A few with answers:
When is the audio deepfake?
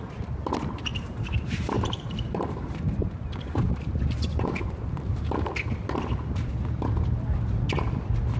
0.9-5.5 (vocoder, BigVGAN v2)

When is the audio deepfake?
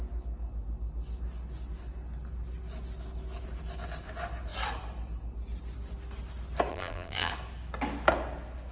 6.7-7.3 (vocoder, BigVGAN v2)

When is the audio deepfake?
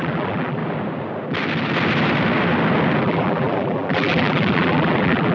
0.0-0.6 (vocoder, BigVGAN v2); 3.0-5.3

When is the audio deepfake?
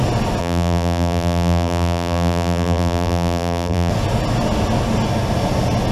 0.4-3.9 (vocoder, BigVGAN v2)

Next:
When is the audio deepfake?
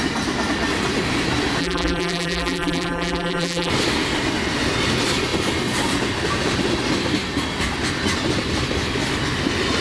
1.6-3.7 (vocoder, BigVGAN v2)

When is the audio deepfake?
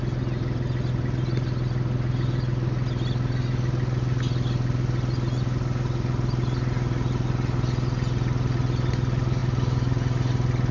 none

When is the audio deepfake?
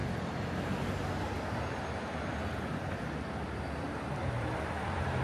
0.0-3.0 (vocoder, BigVGAN v2); 4.2-5.2